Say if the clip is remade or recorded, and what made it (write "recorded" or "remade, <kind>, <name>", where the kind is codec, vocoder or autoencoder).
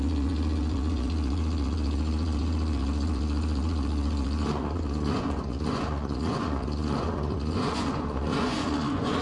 remade, vocoder, Vocos